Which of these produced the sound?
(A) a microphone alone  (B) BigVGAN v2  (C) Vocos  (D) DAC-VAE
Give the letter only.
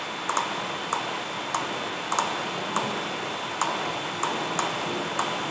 A